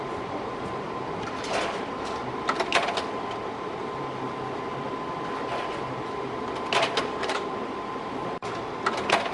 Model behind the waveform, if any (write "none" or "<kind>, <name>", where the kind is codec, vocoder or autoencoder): none